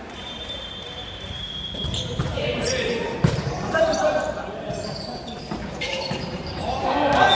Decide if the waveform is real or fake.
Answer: fake